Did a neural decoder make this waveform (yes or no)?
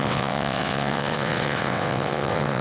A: yes